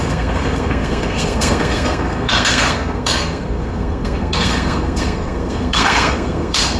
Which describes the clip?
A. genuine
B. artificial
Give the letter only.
B